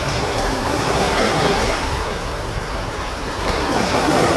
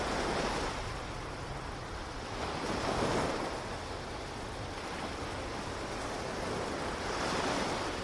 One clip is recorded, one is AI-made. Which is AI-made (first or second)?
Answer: first